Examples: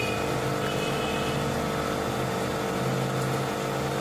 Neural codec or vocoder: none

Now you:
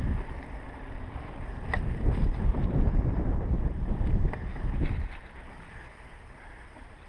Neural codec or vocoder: none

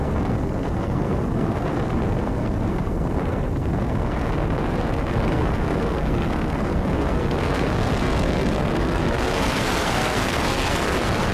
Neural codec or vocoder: codec, SNAC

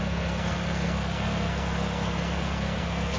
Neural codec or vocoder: codec, SNAC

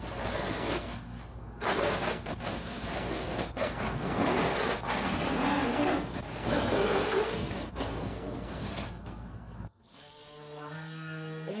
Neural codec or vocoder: codec, SNAC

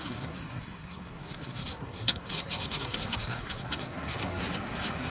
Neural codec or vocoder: codec, SNAC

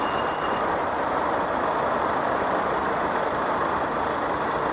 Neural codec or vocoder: none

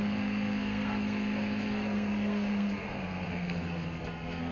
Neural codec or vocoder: codec, SNAC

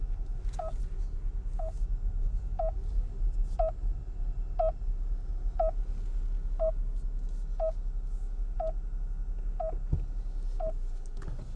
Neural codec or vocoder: none